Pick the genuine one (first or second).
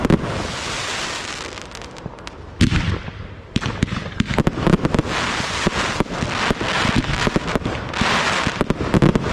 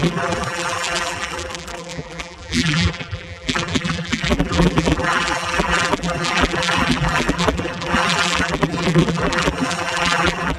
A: first